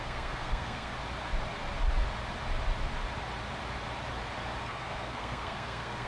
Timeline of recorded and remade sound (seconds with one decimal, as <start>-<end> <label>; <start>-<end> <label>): 0.0-0.9 remade; 0.9-4.6 recorded; 4.6-6.1 remade